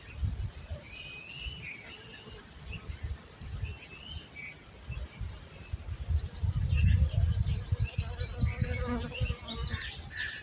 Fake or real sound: real